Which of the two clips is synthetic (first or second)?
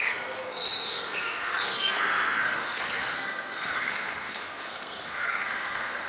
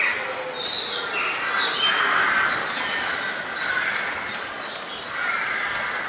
first